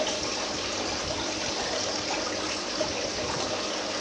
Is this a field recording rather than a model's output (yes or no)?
yes